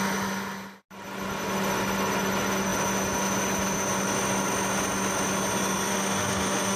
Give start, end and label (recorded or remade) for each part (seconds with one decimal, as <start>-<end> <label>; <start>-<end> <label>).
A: 0.0-5.9 recorded; 5.9-6.8 remade